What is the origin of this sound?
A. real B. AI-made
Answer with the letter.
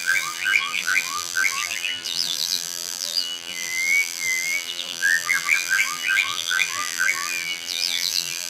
B